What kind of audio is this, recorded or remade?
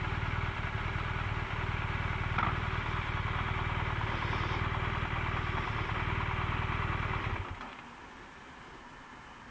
recorded